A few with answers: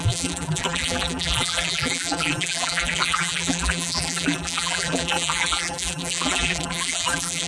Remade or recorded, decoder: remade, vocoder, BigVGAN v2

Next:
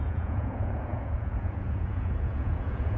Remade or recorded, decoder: remade, vocoder, Vocos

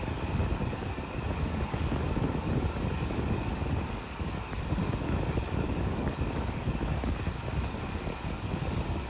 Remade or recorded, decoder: remade, codec, DAC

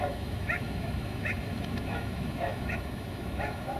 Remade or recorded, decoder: remade, autoencoder, DAC-VAE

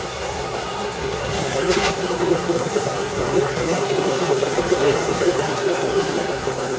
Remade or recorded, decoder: remade, codec, SNAC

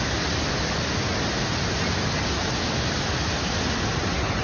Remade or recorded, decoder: recorded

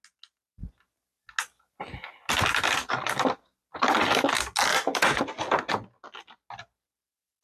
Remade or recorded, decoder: recorded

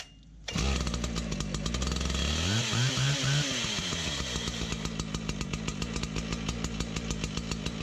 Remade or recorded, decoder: recorded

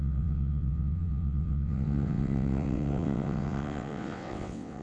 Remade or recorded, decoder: remade, vocoder, WaveNeXt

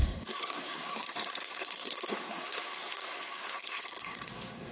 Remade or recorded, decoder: remade, codec, SNAC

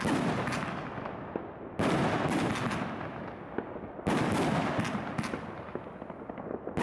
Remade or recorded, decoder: recorded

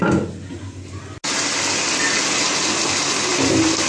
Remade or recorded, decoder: recorded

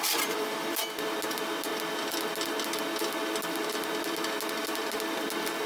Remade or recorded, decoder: recorded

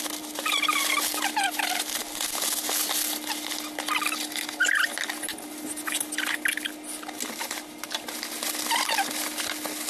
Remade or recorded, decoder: recorded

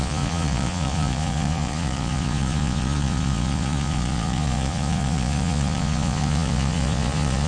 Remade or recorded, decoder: remade, vocoder, Vocos